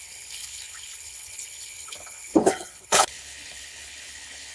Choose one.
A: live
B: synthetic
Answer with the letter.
B